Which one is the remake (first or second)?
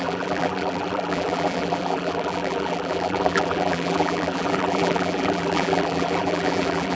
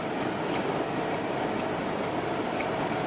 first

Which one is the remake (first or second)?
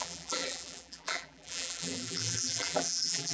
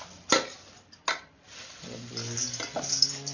first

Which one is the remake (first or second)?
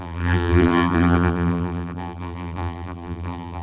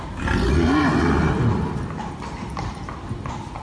first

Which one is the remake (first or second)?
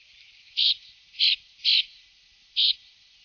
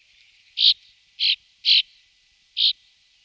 first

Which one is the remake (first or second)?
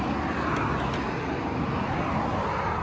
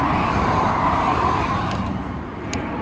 second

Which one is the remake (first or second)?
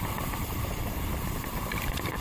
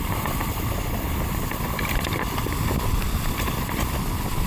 first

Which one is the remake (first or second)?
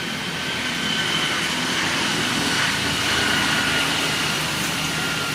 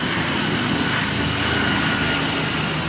first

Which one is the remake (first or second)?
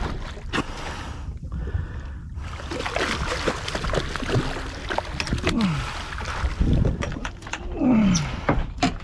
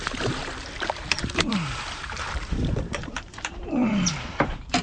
second